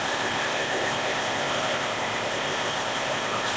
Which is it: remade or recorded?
remade